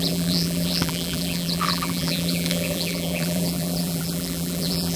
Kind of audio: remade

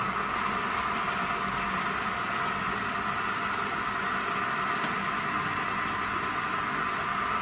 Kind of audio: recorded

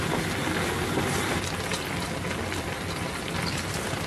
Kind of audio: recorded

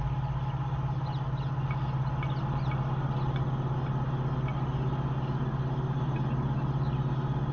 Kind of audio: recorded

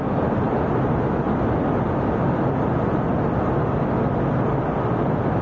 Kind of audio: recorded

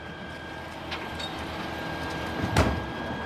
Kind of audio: recorded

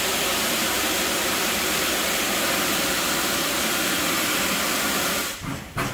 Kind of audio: remade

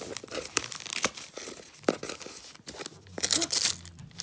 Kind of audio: recorded